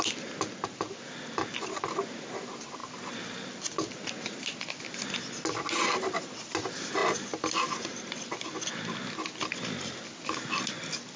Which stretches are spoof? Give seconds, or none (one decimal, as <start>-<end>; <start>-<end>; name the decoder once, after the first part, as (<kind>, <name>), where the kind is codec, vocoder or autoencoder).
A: none